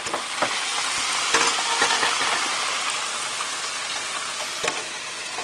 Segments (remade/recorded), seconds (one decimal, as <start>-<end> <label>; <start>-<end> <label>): 0.0-5.4 recorded